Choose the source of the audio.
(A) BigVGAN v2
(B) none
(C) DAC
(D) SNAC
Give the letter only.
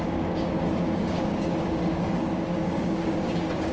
C